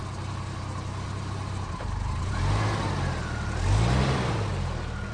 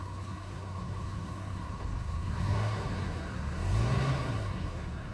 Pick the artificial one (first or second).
second